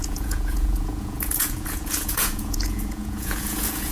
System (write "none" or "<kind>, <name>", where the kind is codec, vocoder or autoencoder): vocoder, Vocos